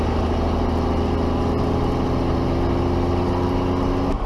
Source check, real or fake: real